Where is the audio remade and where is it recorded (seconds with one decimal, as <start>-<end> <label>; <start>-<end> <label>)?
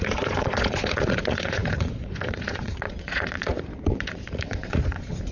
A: 0.0-5.3 remade